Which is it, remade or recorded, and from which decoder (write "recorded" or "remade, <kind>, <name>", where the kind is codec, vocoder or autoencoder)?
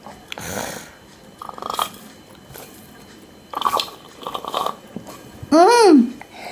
recorded